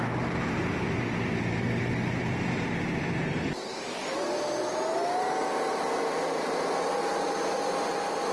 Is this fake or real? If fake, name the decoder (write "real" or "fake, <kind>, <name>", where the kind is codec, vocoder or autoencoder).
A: real